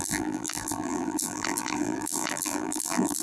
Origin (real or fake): fake